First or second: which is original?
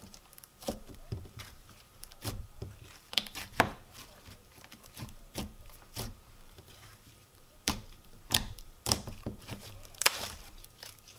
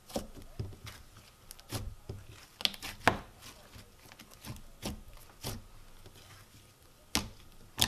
second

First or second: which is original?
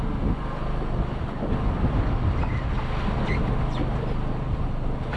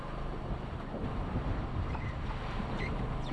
first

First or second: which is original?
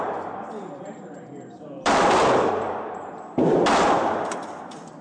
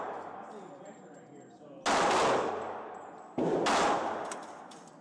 second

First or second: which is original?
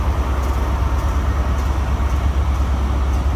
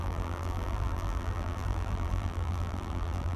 first